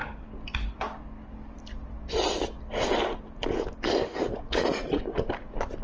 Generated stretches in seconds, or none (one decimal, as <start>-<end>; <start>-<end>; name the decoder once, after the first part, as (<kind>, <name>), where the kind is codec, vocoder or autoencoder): 4.1-5.0 (vocoder, Vocos)